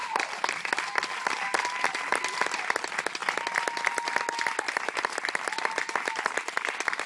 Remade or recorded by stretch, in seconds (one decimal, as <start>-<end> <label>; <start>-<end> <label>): 0.0-7.1 recorded